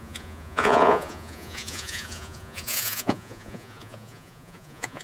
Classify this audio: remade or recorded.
remade